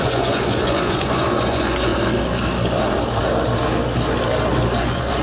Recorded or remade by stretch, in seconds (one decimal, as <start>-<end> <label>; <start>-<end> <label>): 0.0-1.9 remade; 1.9-4.8 recorded; 4.8-5.2 remade